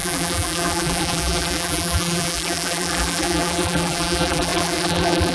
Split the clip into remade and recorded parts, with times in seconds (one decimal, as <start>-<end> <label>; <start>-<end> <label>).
0.0-5.3 remade